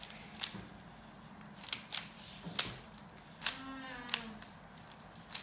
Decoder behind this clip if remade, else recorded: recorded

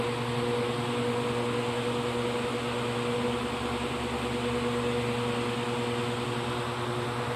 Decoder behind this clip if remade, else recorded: recorded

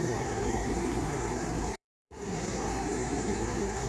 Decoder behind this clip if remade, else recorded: remade, codec, SNAC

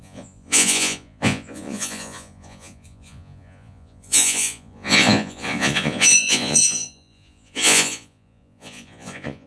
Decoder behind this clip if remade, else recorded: remade, vocoder, Vocos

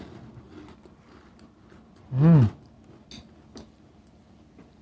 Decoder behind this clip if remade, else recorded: recorded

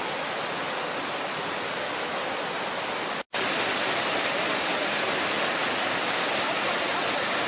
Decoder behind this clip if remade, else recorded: recorded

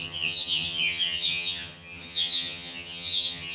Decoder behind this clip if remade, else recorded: remade, vocoder, HiFi-GAN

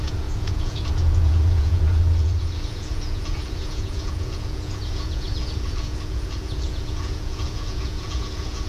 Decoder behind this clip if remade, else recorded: remade, vocoder, Vocos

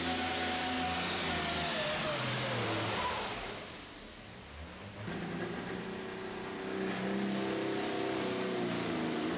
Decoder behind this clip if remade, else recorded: recorded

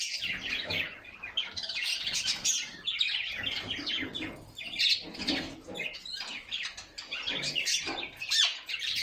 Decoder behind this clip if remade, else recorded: recorded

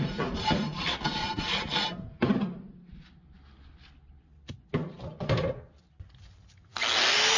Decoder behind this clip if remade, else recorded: recorded